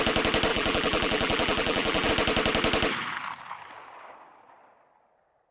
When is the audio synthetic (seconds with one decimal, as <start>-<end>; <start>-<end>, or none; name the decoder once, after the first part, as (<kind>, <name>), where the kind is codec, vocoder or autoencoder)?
0.5-2.1 (vocoder, BigVGAN v2)